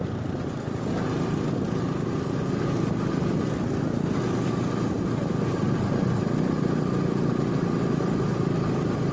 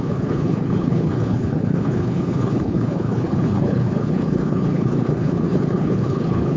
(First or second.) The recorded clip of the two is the first